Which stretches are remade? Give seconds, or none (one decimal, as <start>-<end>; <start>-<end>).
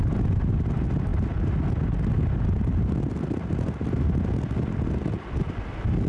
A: none